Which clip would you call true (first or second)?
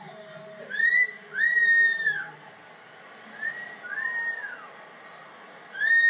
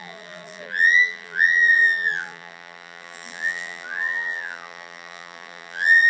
first